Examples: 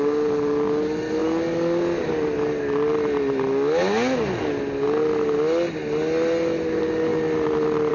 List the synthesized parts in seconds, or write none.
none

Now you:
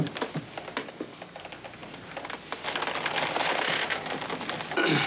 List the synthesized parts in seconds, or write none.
0.8-1.4 (codec, DAC)

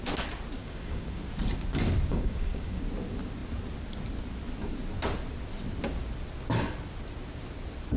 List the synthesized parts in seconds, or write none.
0.6-1.2 (codec, DAC); 2.1-2.8

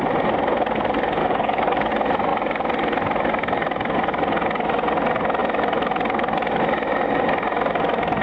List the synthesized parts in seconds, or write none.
1.2-1.9 (codec, DAC)

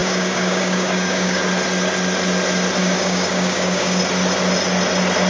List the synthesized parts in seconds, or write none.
0.0-1.4 (codec, DAC); 2.8-4.0

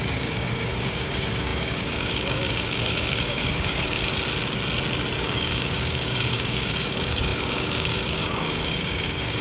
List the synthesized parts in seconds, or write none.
0.0-4.0 (codec, DAC); 5.2-9.4

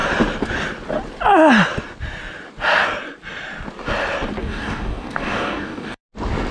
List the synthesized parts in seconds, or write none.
4.4-6.0 (codec, DAC)